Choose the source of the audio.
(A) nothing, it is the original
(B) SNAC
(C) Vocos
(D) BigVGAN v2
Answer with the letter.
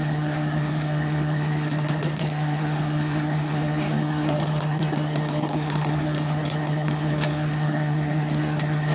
B